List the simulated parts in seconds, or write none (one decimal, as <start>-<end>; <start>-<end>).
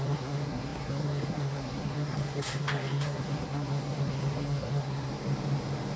0.0-5.1